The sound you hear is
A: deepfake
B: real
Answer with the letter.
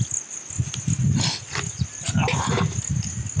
B